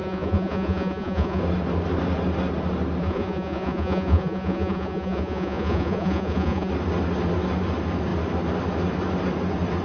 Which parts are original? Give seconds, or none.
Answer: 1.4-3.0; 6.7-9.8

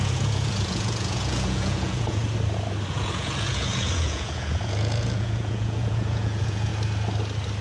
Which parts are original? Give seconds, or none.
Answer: 2.2-2.9; 6.7-7.6

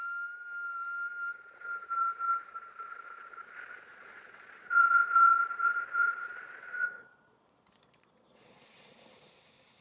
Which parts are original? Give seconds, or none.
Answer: 0.0-3.9; 8.9-9.8

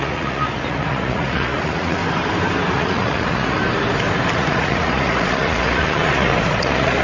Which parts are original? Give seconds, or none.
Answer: 2.0-2.7; 3.6-4.3